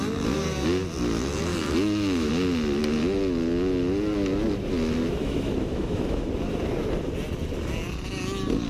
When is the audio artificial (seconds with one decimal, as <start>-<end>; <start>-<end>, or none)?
1.5-2.3; 5.2-6.3